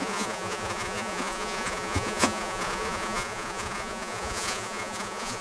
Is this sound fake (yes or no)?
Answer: yes